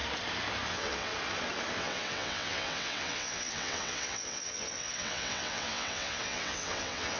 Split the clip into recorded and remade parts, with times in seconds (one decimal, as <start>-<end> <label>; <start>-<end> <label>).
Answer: 0.0-0.7 recorded; 0.7-1.1 remade; 1.1-1.8 recorded; 1.8-7.2 remade